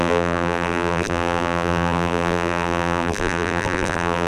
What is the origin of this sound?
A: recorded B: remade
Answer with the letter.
B